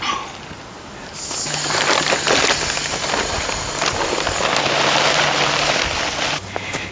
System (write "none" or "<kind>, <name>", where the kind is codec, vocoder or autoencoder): none